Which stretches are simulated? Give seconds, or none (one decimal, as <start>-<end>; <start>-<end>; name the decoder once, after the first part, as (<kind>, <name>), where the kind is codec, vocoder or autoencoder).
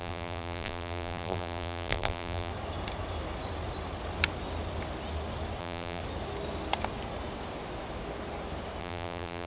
0.0-2.5 (vocoder, BigVGAN v2); 5.6-6.0; 8.8-9.5